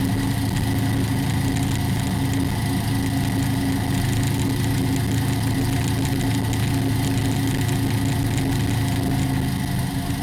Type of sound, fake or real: real